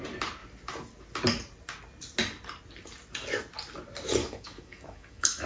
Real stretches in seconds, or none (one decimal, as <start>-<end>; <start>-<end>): 0.0-4.2